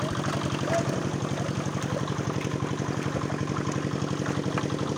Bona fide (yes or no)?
yes